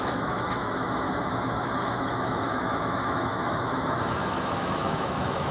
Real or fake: fake